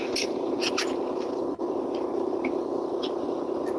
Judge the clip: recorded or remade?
recorded